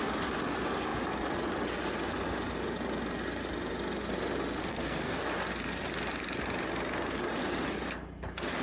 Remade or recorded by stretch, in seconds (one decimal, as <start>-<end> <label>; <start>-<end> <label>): 0.0-4.6 recorded; 4.6-5.2 remade; 5.2-8.6 recorded